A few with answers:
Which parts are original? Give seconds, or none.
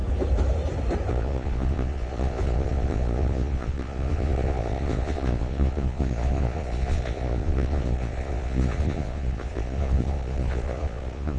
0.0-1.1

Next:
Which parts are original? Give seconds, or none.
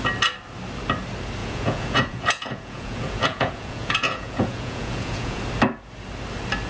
0.0-1.4; 5.4-6.7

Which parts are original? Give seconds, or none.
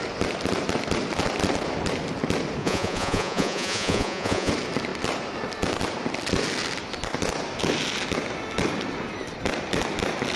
0.0-2.6; 4.5-10.4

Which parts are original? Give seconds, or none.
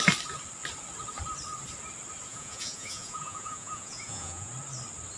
0.0-2.3; 4.5-5.2